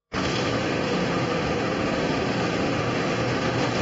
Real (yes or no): no